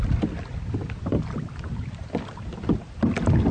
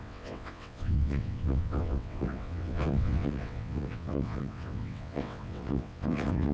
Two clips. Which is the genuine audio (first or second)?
first